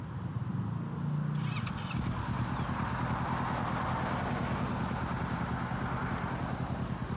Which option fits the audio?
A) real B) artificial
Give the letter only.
A